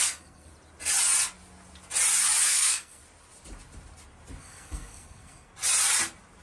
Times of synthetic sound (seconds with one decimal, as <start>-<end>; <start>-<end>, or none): 0.0-0.5; 2.4-3.0; 4.4-5.5